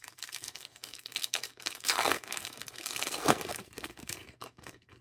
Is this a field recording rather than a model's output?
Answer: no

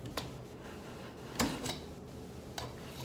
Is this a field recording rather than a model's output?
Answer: yes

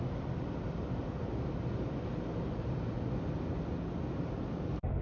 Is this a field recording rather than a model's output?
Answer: yes